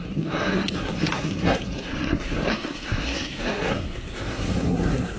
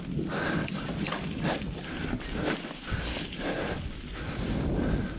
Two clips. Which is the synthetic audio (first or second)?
first